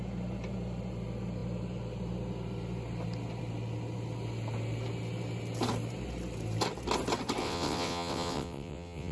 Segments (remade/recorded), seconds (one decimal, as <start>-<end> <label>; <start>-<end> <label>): 0.0-7.4 recorded; 7.4-9.1 remade